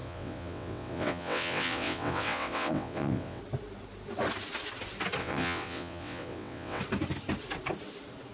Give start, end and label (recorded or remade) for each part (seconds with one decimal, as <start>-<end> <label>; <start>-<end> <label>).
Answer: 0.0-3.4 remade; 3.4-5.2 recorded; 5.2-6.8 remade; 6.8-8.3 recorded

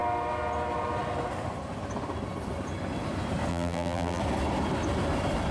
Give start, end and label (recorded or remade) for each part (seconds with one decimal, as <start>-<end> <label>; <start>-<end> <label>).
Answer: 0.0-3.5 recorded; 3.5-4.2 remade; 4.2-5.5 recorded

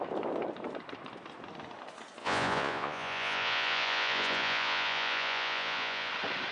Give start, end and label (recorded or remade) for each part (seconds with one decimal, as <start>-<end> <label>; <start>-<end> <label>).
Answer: 0.0-2.2 recorded; 2.2-6.1 remade; 6.1-6.5 recorded